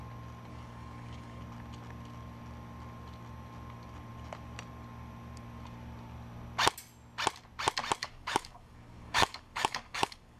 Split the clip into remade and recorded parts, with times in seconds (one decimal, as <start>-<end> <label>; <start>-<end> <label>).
0.0-0.5 recorded; 0.5-1.4 remade; 1.4-8.0 recorded; 8.0-10.4 remade